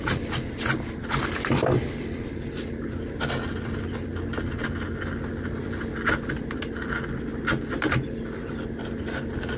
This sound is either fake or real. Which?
real